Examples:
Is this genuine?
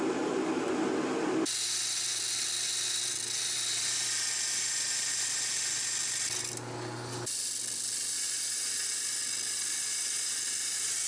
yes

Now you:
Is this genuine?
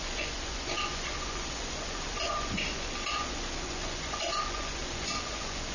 no